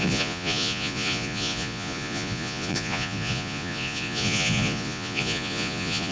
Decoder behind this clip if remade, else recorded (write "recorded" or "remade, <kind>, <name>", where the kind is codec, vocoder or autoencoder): remade, vocoder, Vocos